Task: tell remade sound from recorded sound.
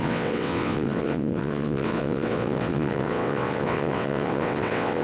remade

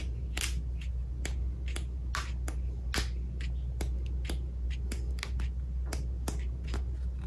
recorded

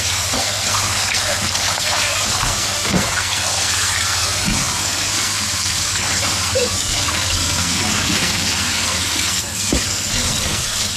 remade